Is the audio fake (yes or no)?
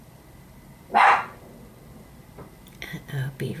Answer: no